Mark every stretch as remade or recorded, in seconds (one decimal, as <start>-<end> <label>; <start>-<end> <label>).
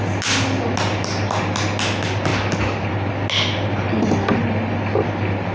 0.0-5.5 recorded